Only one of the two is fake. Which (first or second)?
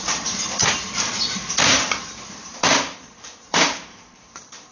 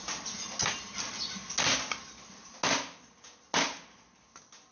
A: first